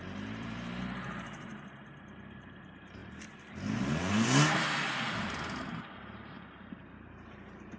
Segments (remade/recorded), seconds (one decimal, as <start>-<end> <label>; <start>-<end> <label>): 0.0-1.5 remade; 1.5-2.3 recorded; 2.3-7.8 remade